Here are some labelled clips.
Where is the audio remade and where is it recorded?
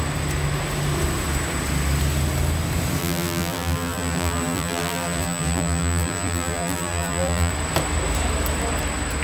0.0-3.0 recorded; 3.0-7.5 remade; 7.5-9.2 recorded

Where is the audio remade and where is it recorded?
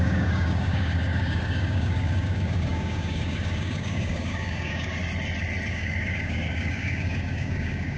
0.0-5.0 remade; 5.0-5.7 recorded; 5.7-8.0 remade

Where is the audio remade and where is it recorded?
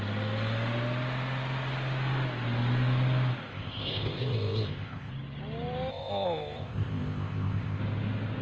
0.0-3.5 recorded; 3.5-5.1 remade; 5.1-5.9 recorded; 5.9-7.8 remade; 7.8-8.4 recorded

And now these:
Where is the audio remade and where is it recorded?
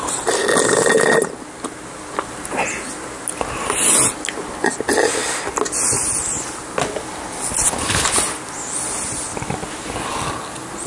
0.0-10.9 recorded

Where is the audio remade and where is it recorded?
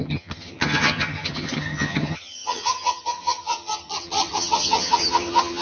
0.0-5.6 remade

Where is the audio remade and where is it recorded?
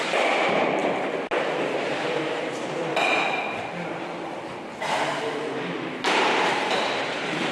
0.0-0.8 remade; 0.8-1.5 recorded; 1.5-7.5 remade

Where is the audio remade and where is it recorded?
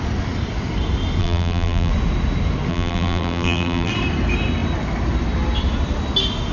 0.0-1.2 recorded; 1.2-1.9 remade; 1.9-2.7 recorded; 2.7-3.9 remade; 3.9-6.5 recorded